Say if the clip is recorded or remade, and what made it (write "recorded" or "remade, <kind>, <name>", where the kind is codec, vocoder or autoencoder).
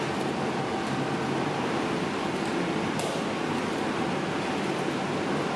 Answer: recorded